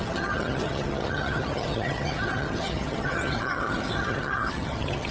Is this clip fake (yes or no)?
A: yes